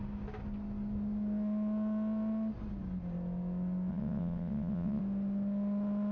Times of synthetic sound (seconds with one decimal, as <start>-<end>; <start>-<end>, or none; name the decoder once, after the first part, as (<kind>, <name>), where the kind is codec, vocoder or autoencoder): 3.9-5.0 (vocoder, WaveNeXt)